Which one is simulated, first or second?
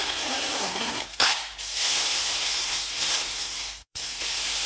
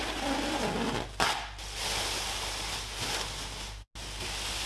first